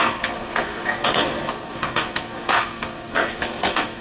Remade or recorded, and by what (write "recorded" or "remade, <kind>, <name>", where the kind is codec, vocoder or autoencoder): remade, codec, SNAC